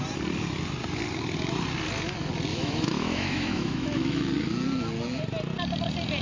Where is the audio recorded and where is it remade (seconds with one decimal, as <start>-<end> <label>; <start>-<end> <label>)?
0.0-2.5 recorded; 2.5-4.3 remade; 4.3-6.2 recorded